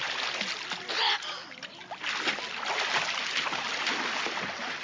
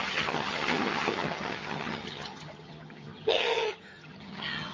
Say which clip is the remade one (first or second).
second